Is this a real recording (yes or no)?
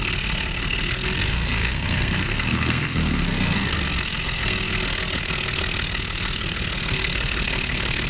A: no